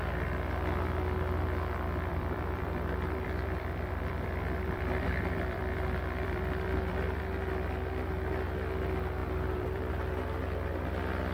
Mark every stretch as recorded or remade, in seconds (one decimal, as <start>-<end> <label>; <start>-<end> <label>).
0.0-2.1 recorded; 2.1-7.2 remade; 7.2-9.2 recorded; 9.2-9.9 remade; 9.9-11.3 recorded